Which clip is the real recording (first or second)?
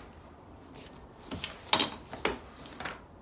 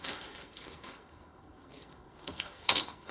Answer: first